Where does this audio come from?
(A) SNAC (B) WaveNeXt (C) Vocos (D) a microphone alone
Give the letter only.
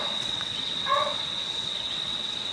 B